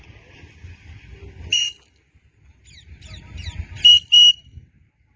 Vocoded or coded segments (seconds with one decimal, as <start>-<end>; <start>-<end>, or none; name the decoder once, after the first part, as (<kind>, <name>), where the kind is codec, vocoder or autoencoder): none